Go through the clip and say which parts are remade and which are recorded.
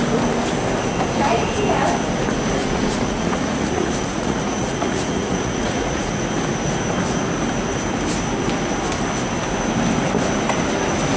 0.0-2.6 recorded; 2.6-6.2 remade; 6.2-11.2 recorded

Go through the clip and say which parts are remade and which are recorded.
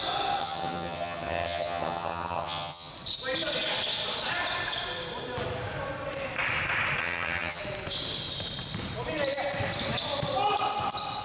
0.0-0.4 recorded; 0.4-2.9 remade; 2.9-7.0 recorded; 7.0-7.6 remade; 7.6-11.2 recorded